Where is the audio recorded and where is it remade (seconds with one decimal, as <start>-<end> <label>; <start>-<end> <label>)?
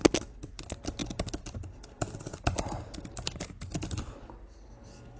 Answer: 0.0-5.2 recorded